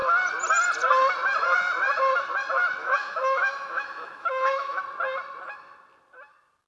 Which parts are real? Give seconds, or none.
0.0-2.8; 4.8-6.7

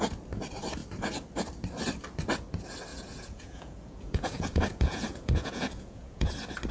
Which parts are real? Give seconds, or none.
0.0-2.9; 6.3-6.7

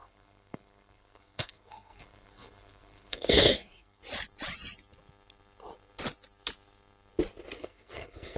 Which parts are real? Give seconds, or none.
4.0-7.6

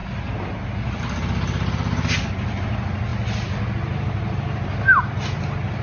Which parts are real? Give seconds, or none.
0.0-5.8